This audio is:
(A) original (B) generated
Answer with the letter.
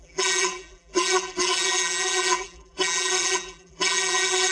B